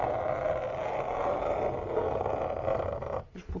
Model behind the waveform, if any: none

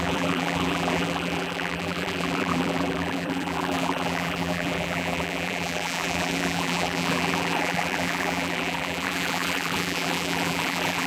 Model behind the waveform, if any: vocoder, BigVGAN v2